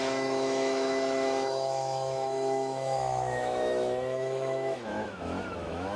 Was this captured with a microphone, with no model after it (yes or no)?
no